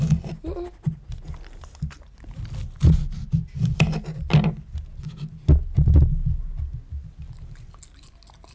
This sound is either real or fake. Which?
real